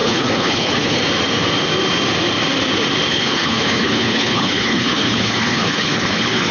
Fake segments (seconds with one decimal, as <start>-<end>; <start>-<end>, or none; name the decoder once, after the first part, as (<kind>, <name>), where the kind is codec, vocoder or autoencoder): 0.0-1.0 (codec, HILCodec); 3.1-6.5